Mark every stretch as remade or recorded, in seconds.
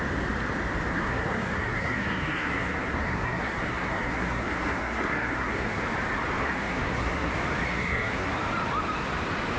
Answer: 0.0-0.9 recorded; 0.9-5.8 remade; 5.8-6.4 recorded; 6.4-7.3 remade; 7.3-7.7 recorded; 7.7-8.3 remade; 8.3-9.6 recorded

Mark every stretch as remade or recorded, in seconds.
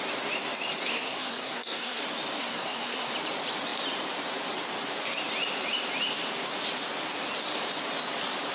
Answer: 0.0-0.9 recorded; 0.9-2.0 remade; 2.0-2.4 recorded; 2.4-3.1 remade; 3.1-8.5 recorded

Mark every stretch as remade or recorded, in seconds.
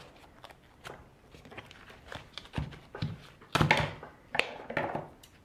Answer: 0.0-5.4 recorded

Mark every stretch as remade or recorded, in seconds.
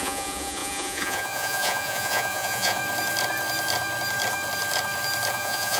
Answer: 0.0-2.8 remade; 2.8-5.3 recorded; 5.3-5.8 remade